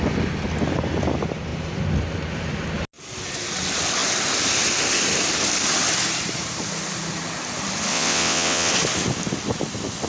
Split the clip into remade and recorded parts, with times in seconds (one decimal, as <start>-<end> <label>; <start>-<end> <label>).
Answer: 0.0-7.9 recorded; 7.9-8.7 remade; 8.7-10.1 recorded